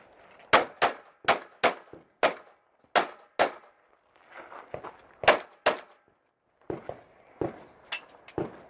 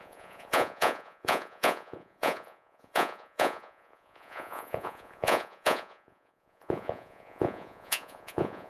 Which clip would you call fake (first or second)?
second